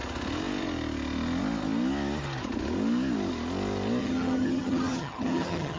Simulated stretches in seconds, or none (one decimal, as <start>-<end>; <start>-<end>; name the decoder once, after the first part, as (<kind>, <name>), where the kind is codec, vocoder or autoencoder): 4.0-5.8 (vocoder, HiFi-GAN)